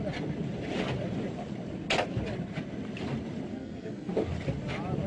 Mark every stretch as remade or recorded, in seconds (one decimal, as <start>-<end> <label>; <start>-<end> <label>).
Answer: 0.0-3.5 recorded; 3.5-4.1 remade; 4.1-5.1 recorded